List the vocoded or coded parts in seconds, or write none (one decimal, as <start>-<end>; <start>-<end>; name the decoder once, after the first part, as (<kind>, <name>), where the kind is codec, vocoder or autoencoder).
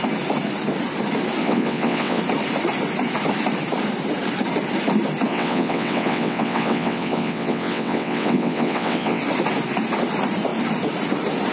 1.4-2.2 (vocoder, WaveNeXt); 5.3-9.2